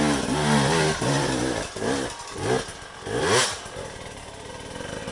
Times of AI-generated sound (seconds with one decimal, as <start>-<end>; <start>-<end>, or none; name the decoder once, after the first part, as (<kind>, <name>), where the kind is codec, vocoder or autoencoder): none